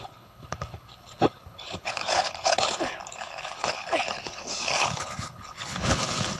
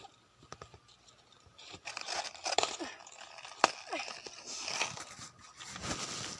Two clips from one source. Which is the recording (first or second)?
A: second